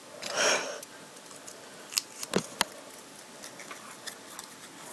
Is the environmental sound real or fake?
real